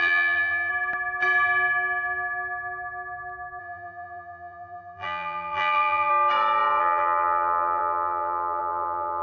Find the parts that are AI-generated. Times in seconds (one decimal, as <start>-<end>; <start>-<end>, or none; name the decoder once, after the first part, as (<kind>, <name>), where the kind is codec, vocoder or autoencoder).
0.0-0.7 (vocoder, BigVGAN v2); 3.6-6.1; 6.8-9.2